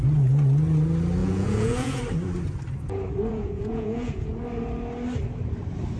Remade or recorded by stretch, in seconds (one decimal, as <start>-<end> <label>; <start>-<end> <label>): 0.0-1.2 recorded; 1.2-2.0 remade; 2.0-3.3 recorded; 3.3-4.3 remade; 4.3-6.0 recorded

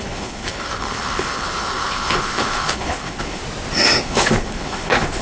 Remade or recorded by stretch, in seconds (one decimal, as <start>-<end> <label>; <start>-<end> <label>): 0.0-3.4 remade; 3.4-4.0 recorded; 4.0-5.2 remade

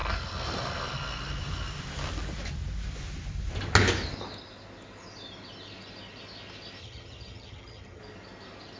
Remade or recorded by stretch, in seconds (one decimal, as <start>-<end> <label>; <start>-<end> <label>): 0.0-6.8 recorded; 6.8-8.0 remade; 8.0-8.8 recorded

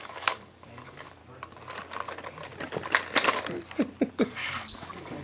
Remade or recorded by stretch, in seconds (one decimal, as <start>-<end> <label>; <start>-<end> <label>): 0.0-1.2 remade; 1.2-4.1 recorded; 4.1-5.2 remade

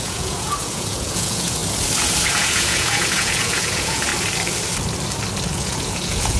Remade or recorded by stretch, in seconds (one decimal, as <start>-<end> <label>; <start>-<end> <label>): 0.0-1.6 remade; 1.6-2.3 recorded; 2.3-4.1 remade; 4.1-5.5 recorded; 5.5-6.4 remade

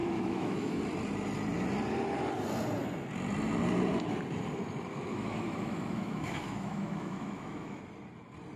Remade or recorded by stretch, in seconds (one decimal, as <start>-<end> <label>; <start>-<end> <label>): 0.0-0.8 remade; 0.8-5.1 recorded; 5.1-7.8 remade; 7.8-8.6 recorded